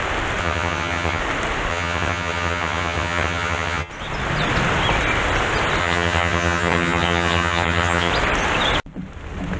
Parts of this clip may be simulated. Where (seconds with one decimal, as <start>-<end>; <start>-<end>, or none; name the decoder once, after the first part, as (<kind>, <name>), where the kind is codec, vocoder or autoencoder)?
0.4-1.2 (vocoder, HiFi-GAN); 1.7-3.9; 5.8-8.1